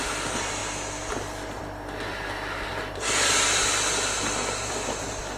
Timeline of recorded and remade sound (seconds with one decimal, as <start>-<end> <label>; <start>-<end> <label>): 0.0-2.7 recorded; 2.7-5.4 remade